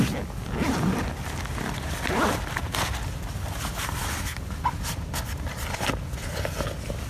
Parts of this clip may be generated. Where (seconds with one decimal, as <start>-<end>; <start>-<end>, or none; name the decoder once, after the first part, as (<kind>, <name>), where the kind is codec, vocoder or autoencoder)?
none